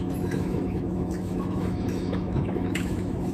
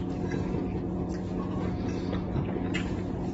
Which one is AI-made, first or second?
first